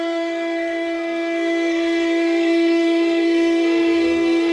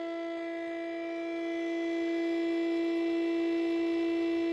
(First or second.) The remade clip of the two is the first